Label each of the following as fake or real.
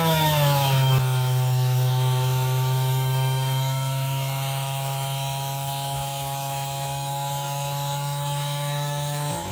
fake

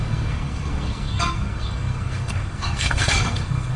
fake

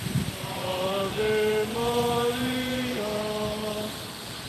real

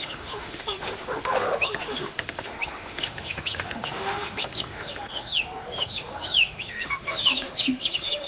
fake